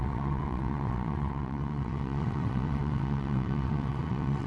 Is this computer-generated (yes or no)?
yes